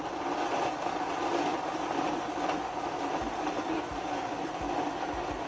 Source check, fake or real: real